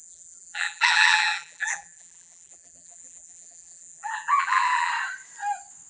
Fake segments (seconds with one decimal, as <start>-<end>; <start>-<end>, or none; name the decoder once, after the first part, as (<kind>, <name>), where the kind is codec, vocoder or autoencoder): 0.0-4.9 (vocoder, BigVGAN v2)